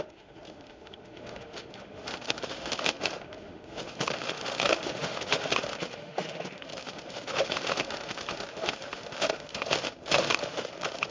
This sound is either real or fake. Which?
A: fake